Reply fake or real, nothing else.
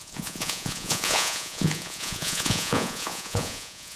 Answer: fake